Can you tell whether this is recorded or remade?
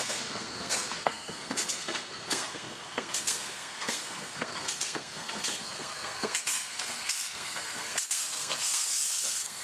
remade